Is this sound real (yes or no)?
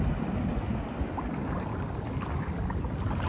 yes